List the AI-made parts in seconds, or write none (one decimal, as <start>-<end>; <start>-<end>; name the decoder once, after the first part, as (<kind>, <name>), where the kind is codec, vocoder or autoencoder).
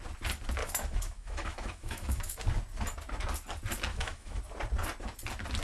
0.6-2.4 (autoencoder, DAC-VAE); 3.9-4.4